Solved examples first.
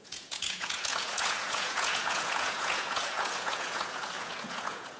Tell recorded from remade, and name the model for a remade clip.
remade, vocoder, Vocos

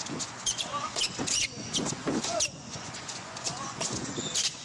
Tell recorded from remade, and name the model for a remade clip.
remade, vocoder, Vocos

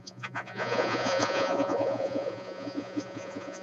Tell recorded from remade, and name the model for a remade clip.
remade, vocoder, Vocos